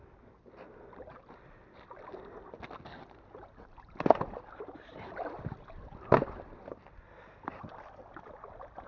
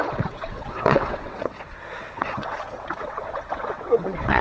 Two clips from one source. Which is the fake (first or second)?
second